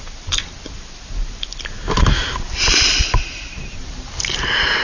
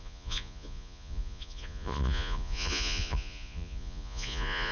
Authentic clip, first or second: first